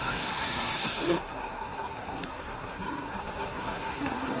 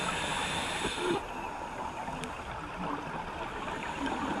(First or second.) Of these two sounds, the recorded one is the second